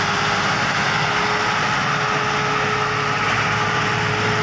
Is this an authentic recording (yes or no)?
yes